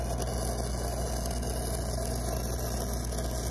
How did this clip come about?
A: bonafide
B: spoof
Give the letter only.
A